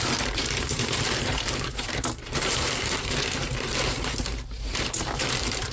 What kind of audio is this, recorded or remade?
remade